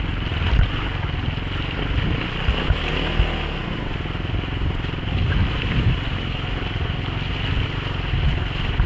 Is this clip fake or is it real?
real